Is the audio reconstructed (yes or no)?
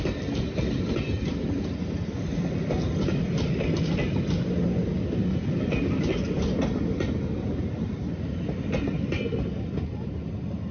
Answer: no